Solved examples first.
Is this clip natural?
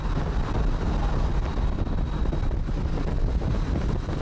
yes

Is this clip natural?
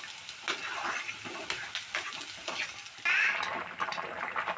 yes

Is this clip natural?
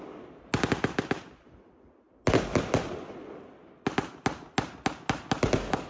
yes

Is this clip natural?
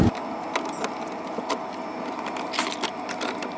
yes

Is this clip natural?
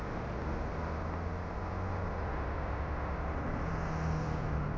yes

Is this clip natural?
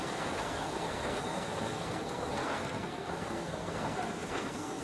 no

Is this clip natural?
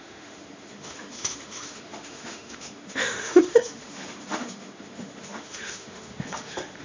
no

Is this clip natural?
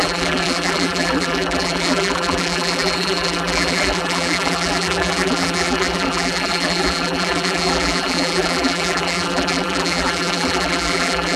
no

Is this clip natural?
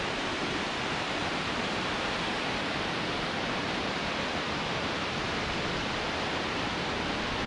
yes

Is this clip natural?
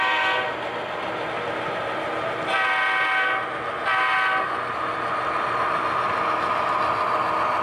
yes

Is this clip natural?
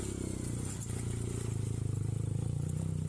yes